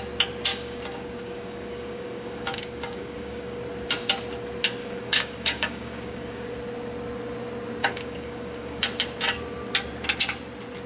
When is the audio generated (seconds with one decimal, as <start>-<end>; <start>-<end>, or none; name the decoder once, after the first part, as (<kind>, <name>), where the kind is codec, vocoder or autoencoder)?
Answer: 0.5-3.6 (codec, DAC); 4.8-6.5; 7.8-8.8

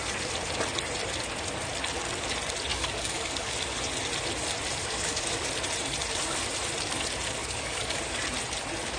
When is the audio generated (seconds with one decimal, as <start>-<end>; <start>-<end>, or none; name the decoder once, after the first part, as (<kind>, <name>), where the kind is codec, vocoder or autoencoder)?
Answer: 2.7-3.5 (codec, DAC); 4.8-5.5; 7.4-8.0

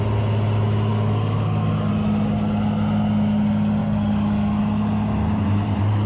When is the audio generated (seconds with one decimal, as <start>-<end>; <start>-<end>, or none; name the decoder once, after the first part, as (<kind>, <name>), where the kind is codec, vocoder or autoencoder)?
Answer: 0.9-1.9 (codec, DAC); 3.8-4.6